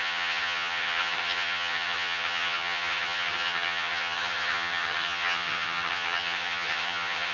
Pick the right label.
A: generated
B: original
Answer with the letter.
A